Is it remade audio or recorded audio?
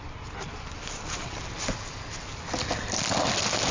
recorded